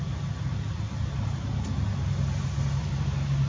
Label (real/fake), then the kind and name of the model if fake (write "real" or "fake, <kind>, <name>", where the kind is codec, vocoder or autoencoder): real